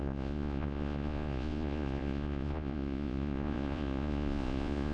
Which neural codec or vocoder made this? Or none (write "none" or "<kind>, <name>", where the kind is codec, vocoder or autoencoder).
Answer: vocoder, Vocos